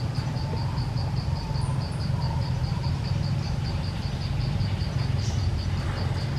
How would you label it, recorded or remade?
remade